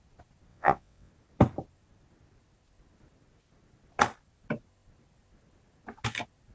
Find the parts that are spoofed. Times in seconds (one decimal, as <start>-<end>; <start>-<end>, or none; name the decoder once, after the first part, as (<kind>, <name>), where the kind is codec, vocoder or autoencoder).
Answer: 0.5-1.1 (vocoder, WaveNeXt)